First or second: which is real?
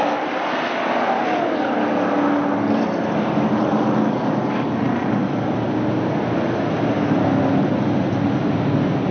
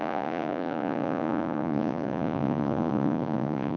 first